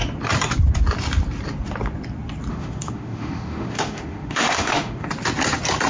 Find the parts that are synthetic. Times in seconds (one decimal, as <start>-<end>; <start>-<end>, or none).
2.5-5.1